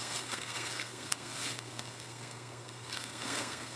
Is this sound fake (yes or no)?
yes